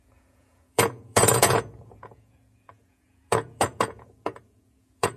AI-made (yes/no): yes